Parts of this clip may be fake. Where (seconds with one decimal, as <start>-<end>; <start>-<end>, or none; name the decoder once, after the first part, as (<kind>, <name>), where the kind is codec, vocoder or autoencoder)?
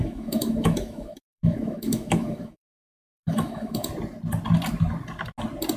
0.0-3.9 (autoencoder, DAC-VAE)